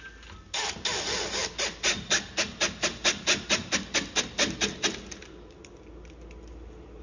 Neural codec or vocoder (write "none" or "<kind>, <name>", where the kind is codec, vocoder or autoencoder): none